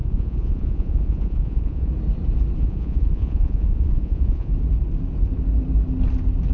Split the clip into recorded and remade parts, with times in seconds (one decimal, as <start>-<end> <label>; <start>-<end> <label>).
0.0-1.9 remade; 1.9-2.6 recorded; 2.6-4.5 remade; 4.5-6.5 recorded